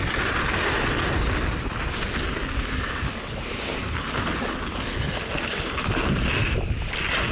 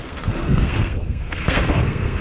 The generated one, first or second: second